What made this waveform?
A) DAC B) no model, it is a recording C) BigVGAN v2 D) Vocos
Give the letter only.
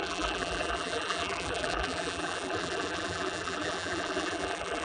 C